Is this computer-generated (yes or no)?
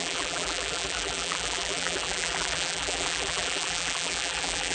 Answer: yes